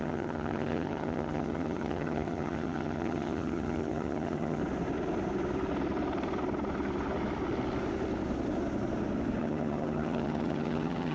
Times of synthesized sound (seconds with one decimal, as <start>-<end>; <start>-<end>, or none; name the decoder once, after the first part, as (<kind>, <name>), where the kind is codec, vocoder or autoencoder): 0.0-4.6 (vocoder, HiFi-GAN); 9.4-11.1